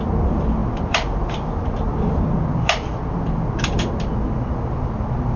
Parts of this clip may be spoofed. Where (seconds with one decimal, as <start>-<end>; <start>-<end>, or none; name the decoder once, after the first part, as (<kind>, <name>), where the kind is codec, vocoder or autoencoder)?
none